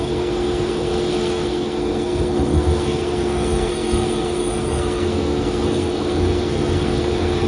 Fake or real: fake